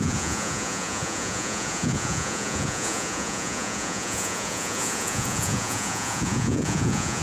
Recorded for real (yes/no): no